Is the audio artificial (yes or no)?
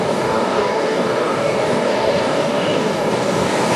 yes